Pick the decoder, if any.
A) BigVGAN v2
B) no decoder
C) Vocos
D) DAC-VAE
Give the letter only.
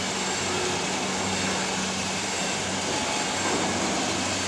B